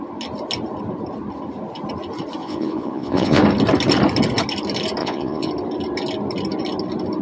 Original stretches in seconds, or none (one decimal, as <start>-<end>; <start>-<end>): 0.0-2.4; 3.4-5.0; 5.5-7.2